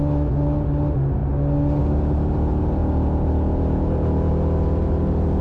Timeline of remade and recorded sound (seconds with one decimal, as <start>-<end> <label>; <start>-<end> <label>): 0.0-5.4 recorded